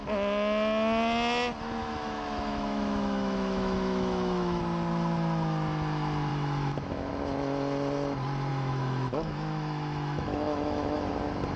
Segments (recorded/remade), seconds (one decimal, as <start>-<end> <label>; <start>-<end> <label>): 0.0-1.8 recorded; 1.8-4.6 remade; 4.6-6.3 recorded; 6.3-7.1 remade; 7.1-8.5 recorded; 8.5-11.1 remade; 11.1-11.6 recorded